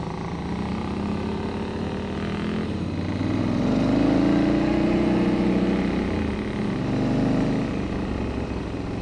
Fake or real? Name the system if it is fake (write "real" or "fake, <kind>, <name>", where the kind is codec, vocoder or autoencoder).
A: real